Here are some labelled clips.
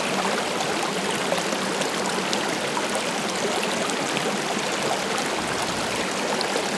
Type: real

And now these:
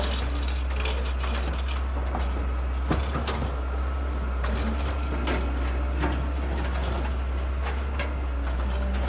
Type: real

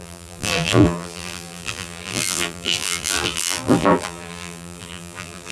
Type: fake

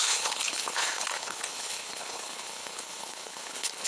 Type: fake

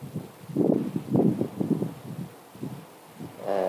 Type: real